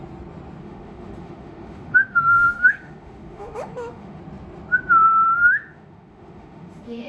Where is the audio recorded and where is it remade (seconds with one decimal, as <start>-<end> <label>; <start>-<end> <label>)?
0.0-0.6 recorded; 0.6-4.2 remade; 4.2-5.4 recorded; 5.4-7.1 remade